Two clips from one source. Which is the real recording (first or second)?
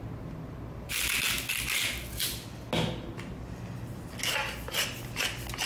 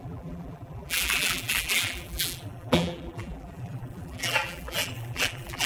first